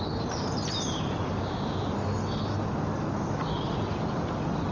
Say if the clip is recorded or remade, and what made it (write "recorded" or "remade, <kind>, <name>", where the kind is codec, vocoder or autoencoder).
recorded